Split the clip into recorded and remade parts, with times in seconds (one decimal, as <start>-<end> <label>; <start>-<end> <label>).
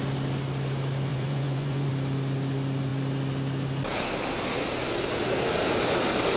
0.0-1.1 recorded; 1.1-1.9 remade; 1.9-6.4 recorded